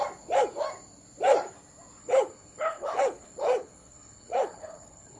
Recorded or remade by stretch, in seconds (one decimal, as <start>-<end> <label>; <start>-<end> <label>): 0.0-2.0 recorded; 2.0-5.2 remade